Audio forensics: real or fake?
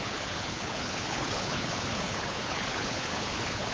fake